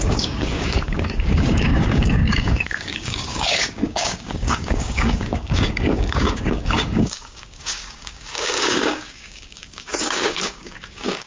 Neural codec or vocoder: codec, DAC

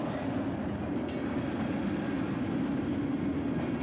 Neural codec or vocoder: none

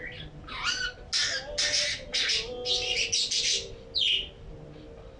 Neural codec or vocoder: none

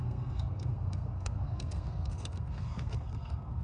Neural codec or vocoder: codec, SNAC